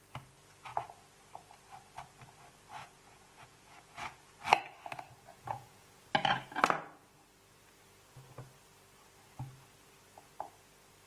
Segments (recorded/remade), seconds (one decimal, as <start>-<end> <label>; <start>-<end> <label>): 0.0-2.8 recorded; 2.8-4.2 remade; 4.2-5.3 recorded; 5.3-6.1 remade; 6.1-11.1 recorded